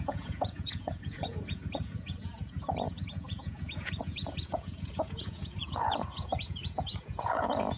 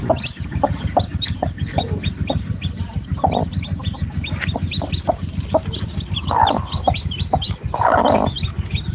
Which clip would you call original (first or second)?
second